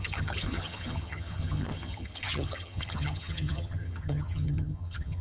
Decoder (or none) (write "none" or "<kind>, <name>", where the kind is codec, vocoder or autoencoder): vocoder, HiFi-GAN